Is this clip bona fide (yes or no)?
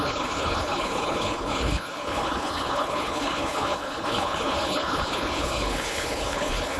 no